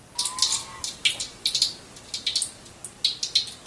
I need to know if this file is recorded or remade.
recorded